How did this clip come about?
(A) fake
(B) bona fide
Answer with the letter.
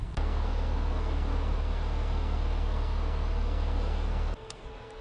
A